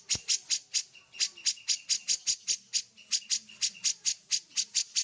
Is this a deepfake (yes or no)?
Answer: no